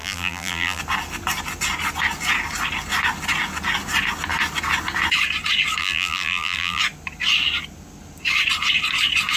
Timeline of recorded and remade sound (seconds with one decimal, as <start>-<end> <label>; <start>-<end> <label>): 0.0-0.8 remade; 0.8-5.8 recorded; 5.8-6.8 remade; 6.8-9.4 recorded